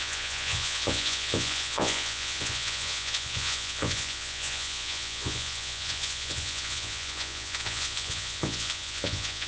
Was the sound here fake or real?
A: fake